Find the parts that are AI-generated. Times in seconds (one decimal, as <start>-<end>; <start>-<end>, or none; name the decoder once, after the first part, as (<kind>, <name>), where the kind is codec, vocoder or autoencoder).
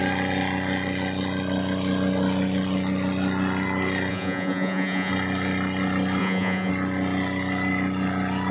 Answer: 4.1-5.1 (vocoder, Vocos); 6.2-6.7